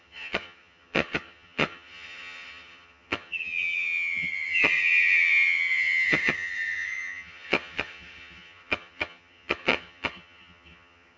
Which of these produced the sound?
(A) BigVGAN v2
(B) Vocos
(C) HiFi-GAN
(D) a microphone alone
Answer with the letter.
C